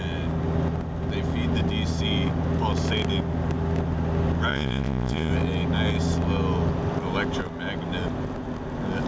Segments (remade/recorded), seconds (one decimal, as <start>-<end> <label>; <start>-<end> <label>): 0.0-4.5 recorded; 4.5-5.3 remade; 5.3-9.1 recorded